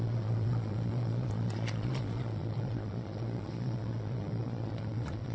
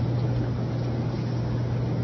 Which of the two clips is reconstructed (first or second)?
first